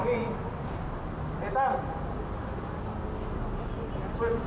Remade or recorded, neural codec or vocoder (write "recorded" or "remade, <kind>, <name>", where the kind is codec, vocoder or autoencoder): recorded